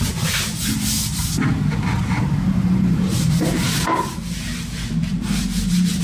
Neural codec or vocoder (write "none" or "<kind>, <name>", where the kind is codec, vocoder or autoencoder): vocoder, BigVGAN v2